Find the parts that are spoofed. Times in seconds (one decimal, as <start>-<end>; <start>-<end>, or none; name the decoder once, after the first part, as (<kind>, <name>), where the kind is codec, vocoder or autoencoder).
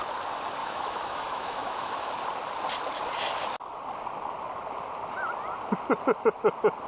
0.6-2.1 (autoencoder, DAC-VAE)